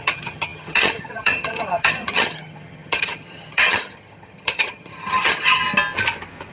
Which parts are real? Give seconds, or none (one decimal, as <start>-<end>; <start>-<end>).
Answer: 5.6-6.5